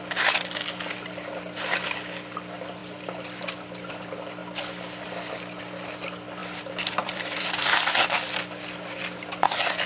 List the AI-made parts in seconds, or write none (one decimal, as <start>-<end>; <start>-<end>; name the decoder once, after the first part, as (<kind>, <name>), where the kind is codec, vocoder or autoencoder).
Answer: 6.4-7.7 (vocoder, BigVGAN v2)